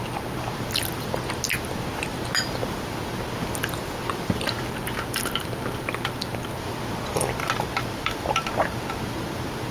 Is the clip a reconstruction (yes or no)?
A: no